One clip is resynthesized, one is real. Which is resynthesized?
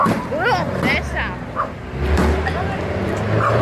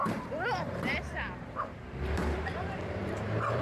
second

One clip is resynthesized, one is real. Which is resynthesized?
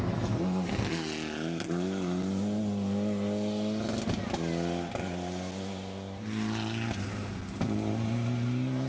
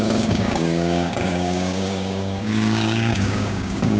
second